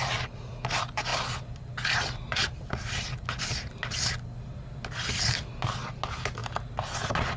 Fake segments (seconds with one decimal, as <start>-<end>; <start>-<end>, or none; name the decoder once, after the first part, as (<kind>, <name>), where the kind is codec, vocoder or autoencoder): none